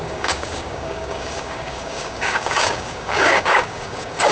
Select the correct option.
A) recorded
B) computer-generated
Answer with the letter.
B